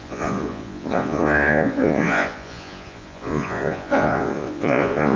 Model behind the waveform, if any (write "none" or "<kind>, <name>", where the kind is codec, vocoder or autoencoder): vocoder, Vocos